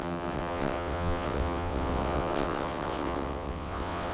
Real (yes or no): no